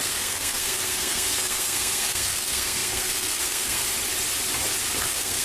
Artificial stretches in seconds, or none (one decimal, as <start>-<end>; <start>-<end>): 0.0-3.8; 5.0-5.4